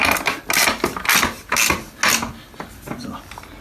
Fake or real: real